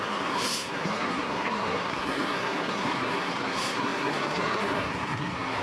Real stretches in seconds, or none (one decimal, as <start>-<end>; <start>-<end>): none